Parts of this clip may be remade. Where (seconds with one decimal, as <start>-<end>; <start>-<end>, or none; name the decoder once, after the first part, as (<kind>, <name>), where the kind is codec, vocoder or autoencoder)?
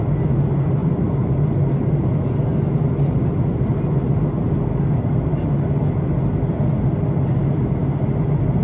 0.8-1.3 (vocoder, BigVGAN v2)